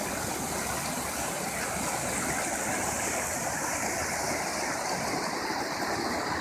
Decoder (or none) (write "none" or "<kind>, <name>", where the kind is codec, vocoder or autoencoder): none